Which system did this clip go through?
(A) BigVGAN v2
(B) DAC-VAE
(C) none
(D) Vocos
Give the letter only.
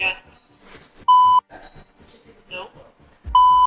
C